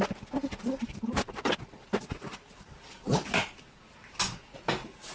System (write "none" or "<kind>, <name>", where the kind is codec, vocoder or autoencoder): none